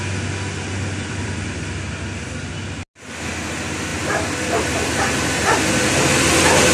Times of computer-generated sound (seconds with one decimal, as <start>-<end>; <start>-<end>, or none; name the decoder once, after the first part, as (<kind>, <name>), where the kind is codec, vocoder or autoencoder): 1.0-1.8 (vocoder, BigVGAN v2); 3.9-4.6